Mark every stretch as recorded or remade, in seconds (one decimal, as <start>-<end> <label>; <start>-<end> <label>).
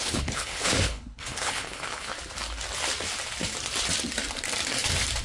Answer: 0.0-2.1 remade; 2.1-5.2 recorded